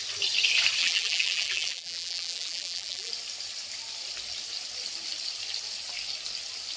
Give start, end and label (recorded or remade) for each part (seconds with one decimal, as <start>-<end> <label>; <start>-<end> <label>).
0.0-0.8 recorded; 0.8-3.1 remade; 3.1-6.8 recorded